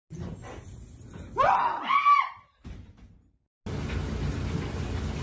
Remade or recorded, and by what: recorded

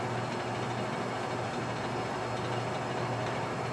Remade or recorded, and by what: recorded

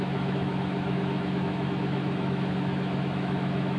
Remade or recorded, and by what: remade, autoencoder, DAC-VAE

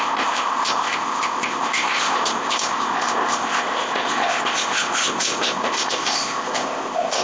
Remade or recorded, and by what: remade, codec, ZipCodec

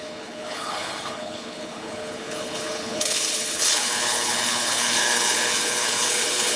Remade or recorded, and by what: remade, codec, HILCodec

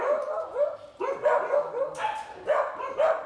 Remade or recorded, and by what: recorded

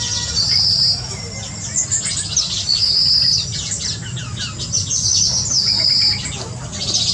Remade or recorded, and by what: recorded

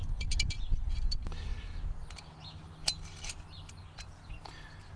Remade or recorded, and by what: recorded